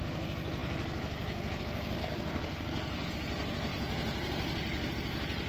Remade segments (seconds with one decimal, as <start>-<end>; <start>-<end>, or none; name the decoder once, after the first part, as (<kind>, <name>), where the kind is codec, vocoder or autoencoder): 2.0-3.1 (codec, SNAC)